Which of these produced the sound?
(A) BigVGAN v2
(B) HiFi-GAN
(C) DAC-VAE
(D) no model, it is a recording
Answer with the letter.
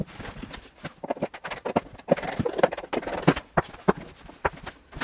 D